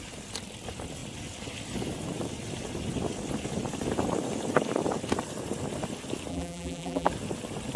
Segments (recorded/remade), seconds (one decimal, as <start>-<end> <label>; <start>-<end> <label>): 0.0-6.3 recorded; 6.3-7.1 remade; 7.1-7.8 recorded